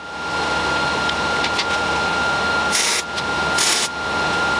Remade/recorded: recorded